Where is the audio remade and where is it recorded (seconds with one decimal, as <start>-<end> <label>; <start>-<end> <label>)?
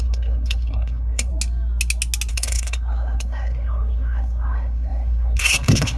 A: 0.0-1.3 remade; 1.3-2.3 recorded; 2.3-6.0 remade